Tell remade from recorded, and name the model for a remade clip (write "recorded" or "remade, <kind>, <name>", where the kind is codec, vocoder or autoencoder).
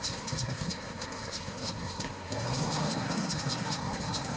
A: remade, codec, SNAC